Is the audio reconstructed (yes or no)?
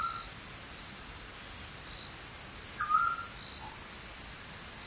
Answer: no